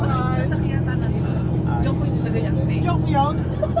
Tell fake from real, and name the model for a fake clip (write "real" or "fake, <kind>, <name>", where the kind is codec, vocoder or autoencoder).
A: real